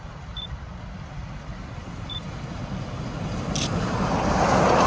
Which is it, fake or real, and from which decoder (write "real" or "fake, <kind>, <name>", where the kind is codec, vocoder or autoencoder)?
fake, vocoder, BigVGAN v2